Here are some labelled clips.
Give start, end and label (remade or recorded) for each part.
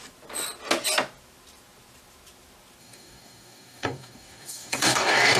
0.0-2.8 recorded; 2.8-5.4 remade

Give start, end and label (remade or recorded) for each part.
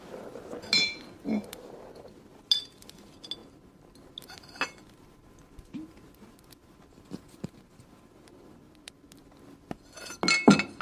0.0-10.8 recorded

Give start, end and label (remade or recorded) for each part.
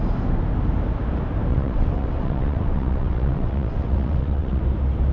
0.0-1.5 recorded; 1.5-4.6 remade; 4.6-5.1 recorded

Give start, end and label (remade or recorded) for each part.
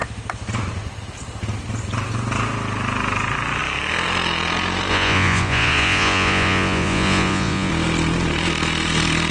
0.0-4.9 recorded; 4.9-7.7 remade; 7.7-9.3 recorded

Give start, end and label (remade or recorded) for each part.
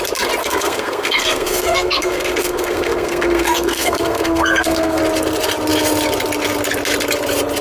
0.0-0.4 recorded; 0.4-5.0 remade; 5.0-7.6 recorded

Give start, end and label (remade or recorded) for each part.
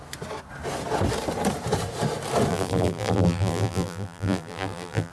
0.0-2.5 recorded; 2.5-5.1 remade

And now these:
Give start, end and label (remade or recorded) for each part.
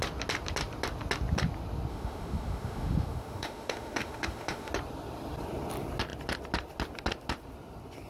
0.0-1.9 recorded; 1.9-4.7 remade; 4.7-8.1 recorded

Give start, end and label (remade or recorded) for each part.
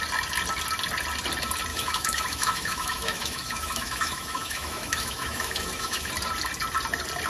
0.0-1.7 recorded; 1.7-6.1 remade; 6.1-7.3 recorded